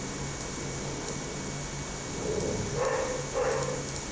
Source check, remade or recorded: recorded